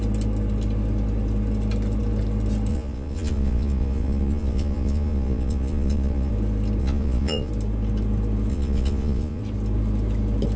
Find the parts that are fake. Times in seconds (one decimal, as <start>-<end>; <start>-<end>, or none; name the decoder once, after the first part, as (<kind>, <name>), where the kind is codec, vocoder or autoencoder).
2.7-6.3 (vocoder, Vocos); 6.8-7.5; 8.5-9.4